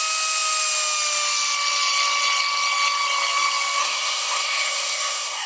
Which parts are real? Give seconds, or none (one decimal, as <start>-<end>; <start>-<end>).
0.0-3.8

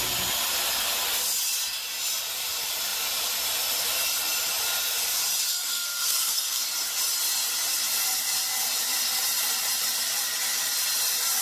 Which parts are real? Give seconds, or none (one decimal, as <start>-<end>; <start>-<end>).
0.0-5.5; 6.6-11.4

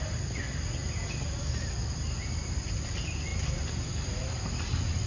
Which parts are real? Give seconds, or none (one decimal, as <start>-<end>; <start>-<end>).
0.0-5.1

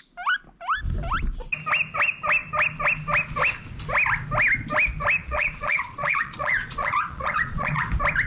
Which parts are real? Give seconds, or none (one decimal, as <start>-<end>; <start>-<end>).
0.0-5.2; 7.9-8.3

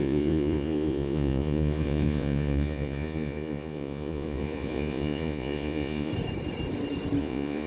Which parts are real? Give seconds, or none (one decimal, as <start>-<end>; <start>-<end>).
6.1-7.2